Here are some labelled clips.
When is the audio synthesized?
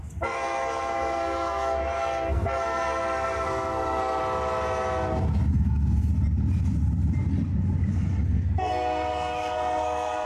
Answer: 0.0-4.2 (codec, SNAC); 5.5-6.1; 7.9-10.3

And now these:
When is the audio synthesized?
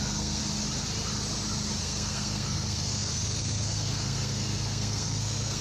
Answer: 0.0-0.4 (codec, SNAC); 1.8-5.6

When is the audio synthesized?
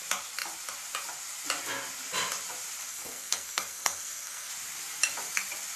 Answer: 2.9-4.5 (codec, SNAC)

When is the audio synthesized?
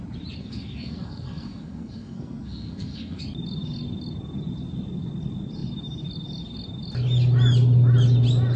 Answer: 0.4-3.2 (codec, SNAC)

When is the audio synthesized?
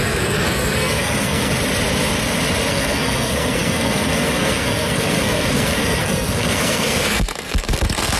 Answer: 0.0-1.5 (codec, SNAC); 2.7-8.2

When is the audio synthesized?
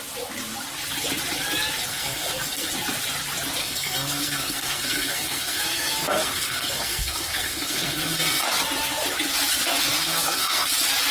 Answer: 1.9-2.7 (codec, SNAC); 3.6-8.5; 10.0-10.7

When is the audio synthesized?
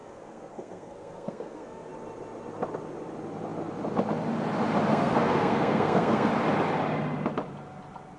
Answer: 0.0-1.9 (codec, SNAC); 4.9-6.3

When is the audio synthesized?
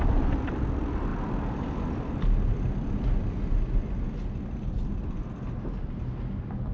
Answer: none